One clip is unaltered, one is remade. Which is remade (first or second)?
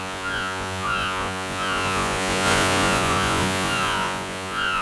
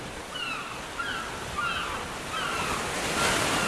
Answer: first